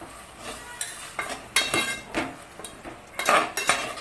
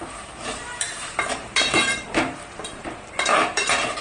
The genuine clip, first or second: first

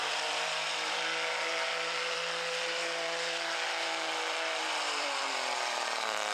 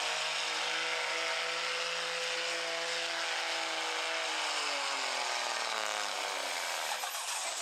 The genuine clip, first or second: second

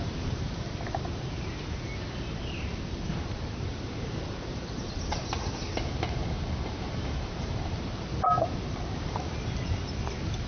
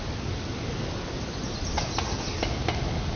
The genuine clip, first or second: second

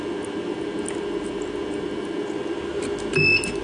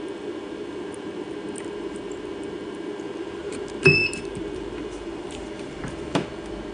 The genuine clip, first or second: first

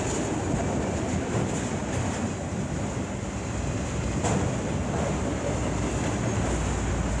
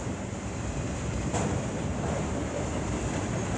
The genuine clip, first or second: first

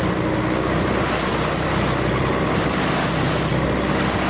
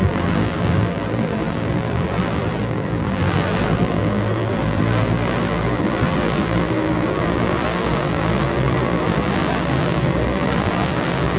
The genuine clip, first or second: first